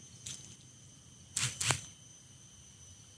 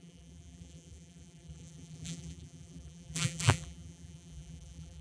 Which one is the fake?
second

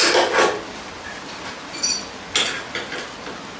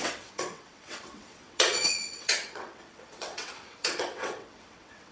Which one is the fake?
second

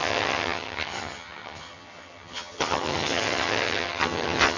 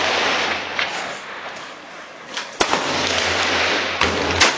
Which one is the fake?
first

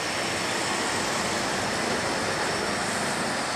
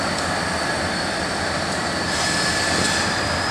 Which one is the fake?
second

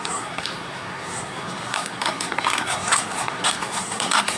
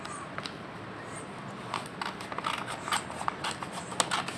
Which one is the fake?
first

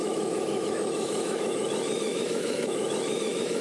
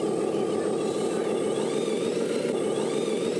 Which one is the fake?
first